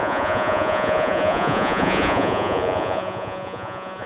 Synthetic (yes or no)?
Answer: yes